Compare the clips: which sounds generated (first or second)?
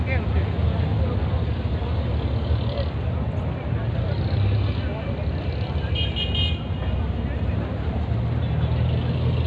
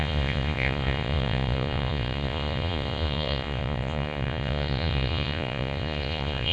second